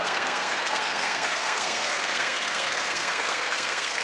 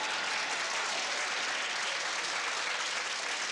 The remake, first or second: first